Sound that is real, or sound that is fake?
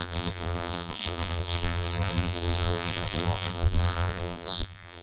fake